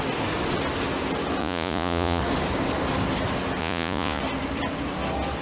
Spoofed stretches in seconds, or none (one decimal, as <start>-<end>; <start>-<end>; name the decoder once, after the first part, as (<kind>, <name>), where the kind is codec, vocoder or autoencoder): 1.4-2.2 (vocoder, Vocos); 3.6-4.2